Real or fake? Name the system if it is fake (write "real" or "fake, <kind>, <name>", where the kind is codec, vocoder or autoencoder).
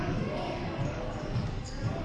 fake, codec, DAC